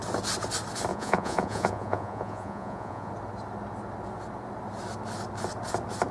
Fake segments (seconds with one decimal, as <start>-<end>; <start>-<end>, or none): 0.9-3.1